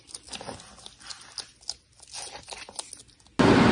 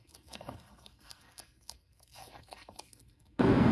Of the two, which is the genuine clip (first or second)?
first